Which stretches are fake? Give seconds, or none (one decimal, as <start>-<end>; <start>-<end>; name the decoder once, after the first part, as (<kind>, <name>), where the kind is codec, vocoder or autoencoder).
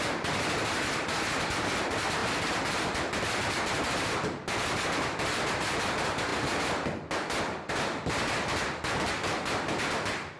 none